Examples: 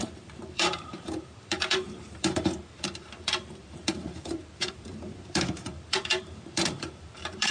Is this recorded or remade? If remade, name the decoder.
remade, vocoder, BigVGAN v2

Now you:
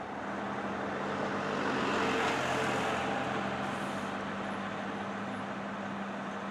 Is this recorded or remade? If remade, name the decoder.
recorded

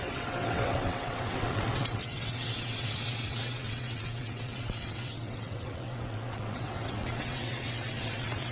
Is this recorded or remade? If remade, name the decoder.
remade, vocoder, WaveNeXt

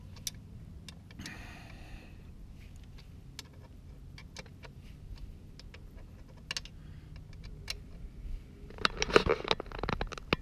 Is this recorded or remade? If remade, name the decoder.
recorded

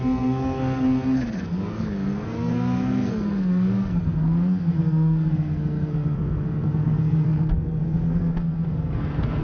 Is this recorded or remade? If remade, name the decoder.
remade, codec, SNAC